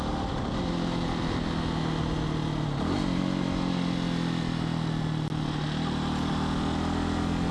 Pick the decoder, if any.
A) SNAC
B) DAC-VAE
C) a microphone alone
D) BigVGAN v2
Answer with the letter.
C